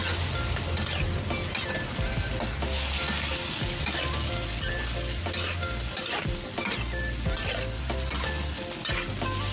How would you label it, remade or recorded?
recorded